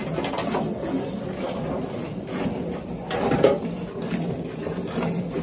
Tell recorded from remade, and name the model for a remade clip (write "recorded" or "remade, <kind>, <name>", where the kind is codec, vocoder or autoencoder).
recorded